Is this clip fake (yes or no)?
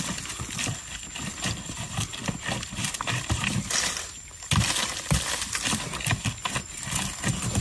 no